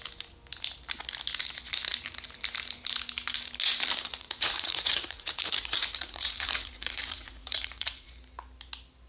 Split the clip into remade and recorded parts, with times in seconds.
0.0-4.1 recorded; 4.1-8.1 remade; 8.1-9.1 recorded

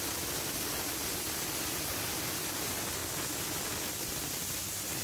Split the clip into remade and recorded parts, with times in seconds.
0.0-1.0 remade; 1.0-2.1 recorded; 2.1-3.0 remade; 3.0-3.9 recorded; 3.9-5.0 remade